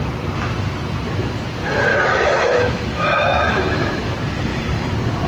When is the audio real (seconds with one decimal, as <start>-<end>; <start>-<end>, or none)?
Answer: 0.0-1.9; 4.1-5.3